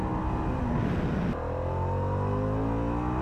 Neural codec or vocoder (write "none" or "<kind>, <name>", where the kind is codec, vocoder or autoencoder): none